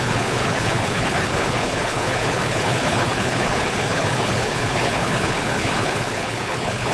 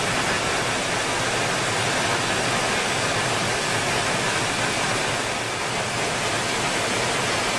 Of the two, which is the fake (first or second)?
first